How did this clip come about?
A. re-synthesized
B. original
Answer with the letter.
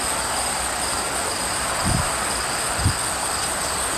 B